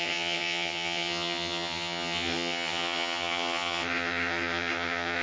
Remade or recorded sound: remade